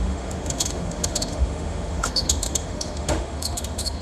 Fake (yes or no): yes